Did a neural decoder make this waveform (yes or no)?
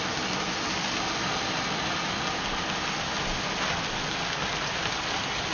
no